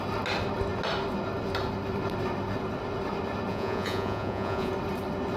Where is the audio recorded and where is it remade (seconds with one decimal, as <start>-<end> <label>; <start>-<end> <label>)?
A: 0.0-3.5 recorded; 3.5-4.7 remade; 4.7-5.4 recorded